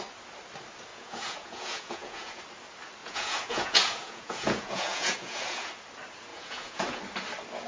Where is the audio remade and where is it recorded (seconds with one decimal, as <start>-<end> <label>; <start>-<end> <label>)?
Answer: 0.0-0.9 recorded; 0.9-2.4 remade; 2.4-3.0 recorded; 3.0-5.7 remade; 5.7-6.3 recorded; 6.3-7.0 remade; 7.0-7.7 recorded